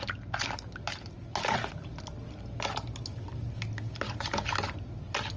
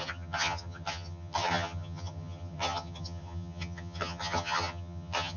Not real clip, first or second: second